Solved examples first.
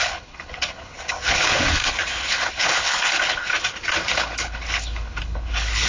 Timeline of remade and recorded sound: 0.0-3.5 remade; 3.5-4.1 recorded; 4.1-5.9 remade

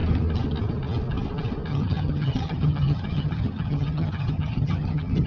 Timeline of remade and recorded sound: 0.0-1.7 recorded; 1.7-5.3 remade

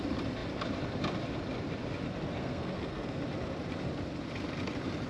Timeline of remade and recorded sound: 0.0-2.4 recorded; 2.4-3.2 remade; 3.2-5.1 recorded

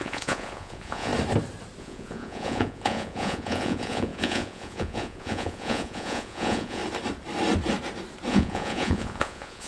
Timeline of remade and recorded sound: 0.0-1.1 remade; 1.1-1.8 recorded; 1.8-6.8 remade; 6.8-8.3 recorded; 8.3-9.7 remade

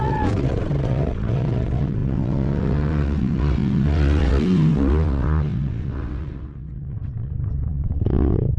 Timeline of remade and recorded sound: 0.0-8.6 remade